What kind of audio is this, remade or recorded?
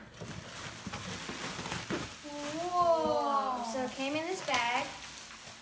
recorded